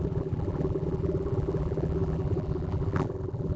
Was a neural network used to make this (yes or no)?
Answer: yes